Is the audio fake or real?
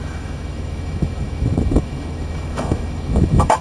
fake